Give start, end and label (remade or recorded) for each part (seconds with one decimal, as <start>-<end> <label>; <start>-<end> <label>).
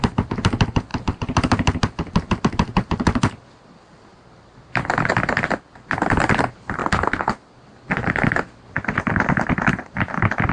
0.0-0.9 remade; 0.9-3.5 recorded; 3.5-6.8 remade; 6.8-9.0 recorded; 9.0-10.5 remade